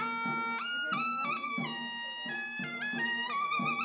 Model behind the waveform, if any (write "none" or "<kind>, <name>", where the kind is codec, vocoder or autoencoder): none